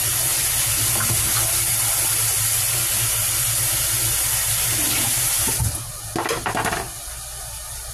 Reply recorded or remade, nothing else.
recorded